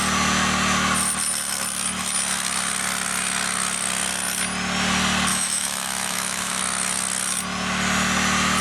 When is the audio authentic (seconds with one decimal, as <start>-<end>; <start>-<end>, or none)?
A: 0.0-5.3; 6.6-8.6

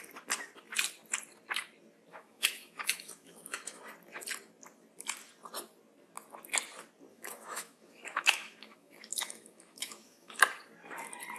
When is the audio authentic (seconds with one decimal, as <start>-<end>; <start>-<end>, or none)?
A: 0.0-2.1; 3.8-7.1; 10.4-11.4